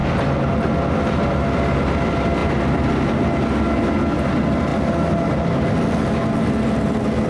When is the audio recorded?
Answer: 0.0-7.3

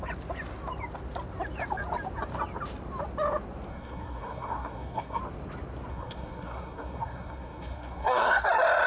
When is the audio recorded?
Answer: 0.0-3.7; 5.2-5.9; 8.5-8.9

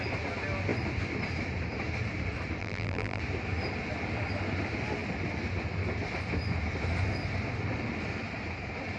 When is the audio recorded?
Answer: 0.0-2.6; 3.2-9.0